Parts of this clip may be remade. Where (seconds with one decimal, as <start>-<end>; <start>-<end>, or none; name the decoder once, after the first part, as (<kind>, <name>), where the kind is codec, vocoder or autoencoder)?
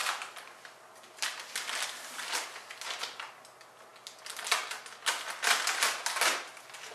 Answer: none